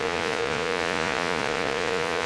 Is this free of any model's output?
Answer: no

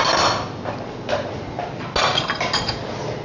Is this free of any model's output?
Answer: yes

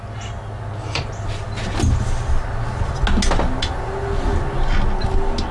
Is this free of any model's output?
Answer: yes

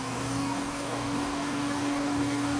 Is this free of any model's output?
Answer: no